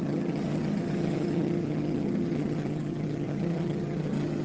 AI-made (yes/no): yes